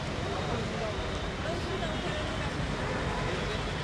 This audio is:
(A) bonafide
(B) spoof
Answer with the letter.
A